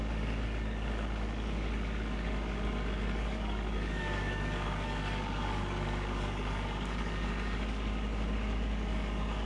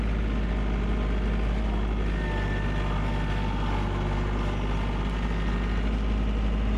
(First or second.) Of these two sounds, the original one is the second